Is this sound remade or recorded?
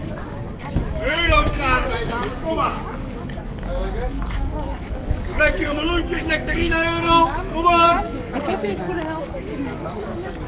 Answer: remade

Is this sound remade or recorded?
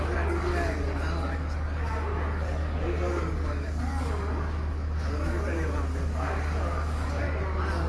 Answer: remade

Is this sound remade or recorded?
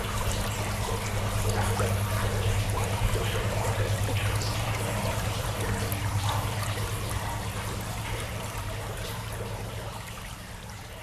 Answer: recorded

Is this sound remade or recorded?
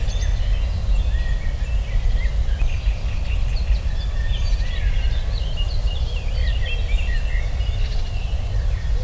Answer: recorded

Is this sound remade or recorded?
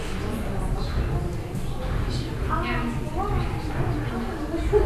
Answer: recorded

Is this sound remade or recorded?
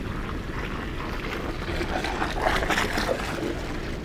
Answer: recorded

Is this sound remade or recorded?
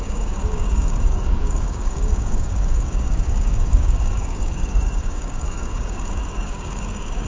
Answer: remade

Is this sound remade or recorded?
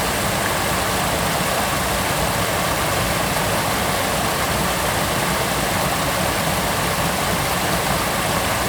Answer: recorded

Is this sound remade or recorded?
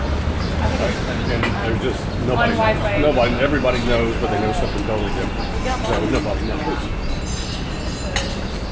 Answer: recorded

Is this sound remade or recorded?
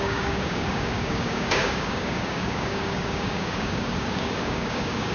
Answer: remade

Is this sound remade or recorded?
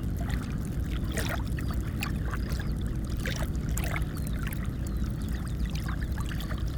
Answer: recorded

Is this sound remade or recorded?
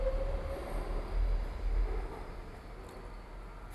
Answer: recorded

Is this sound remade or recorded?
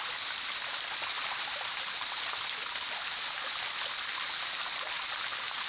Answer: recorded